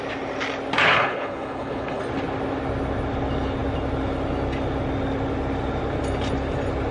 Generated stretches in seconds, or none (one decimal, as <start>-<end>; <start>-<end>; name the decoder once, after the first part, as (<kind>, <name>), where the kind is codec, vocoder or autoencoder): 0.9-2.0 (codec, HILCodec)